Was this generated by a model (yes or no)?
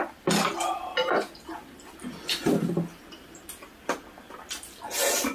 no